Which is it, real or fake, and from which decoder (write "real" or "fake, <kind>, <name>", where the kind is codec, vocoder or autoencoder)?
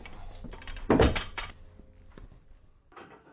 real